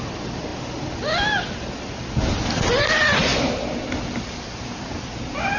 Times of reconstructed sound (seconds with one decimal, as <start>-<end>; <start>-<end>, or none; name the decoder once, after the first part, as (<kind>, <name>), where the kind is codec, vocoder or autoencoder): none